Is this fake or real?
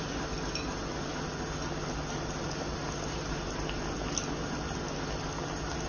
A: real